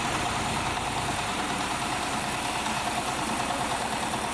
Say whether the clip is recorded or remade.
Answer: remade